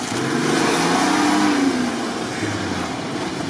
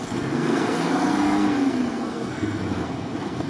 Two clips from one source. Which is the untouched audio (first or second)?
first